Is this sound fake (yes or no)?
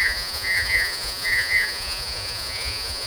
yes